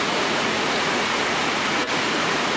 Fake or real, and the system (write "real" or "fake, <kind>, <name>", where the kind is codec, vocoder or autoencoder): fake, vocoder, Vocos